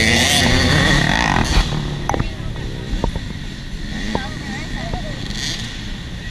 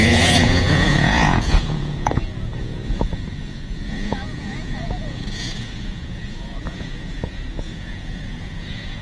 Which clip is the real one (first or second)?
first